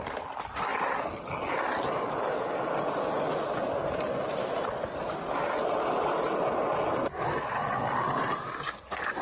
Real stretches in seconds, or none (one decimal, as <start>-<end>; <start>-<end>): 0.0-9.2